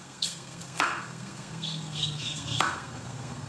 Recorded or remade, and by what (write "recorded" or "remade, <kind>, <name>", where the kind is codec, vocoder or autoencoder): remade, codec, SNAC